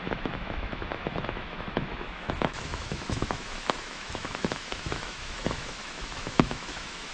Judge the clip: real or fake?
fake